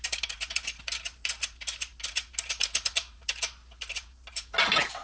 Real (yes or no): yes